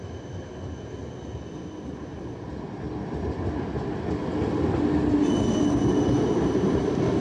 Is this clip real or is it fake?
real